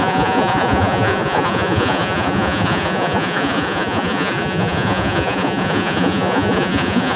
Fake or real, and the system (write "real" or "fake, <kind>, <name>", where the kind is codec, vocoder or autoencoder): fake, vocoder, Vocos